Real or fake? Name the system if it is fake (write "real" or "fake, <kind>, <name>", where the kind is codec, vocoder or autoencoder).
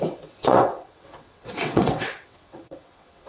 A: fake, vocoder, WaveNeXt